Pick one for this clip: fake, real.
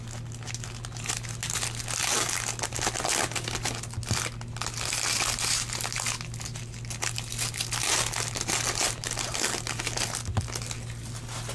real